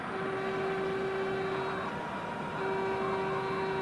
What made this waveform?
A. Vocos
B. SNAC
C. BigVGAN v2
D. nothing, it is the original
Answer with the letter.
D